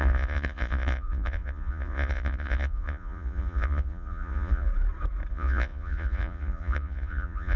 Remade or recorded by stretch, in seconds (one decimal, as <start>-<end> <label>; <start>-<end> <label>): 0.0-4.7 remade; 4.7-5.3 recorded; 5.3-7.6 remade